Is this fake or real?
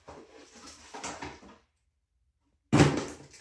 real